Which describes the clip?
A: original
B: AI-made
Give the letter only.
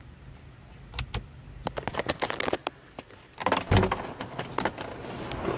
A